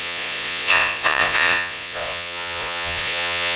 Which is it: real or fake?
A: fake